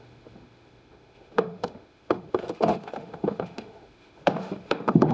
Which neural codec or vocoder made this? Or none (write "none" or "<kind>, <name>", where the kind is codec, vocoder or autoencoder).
autoencoder, DAC-VAE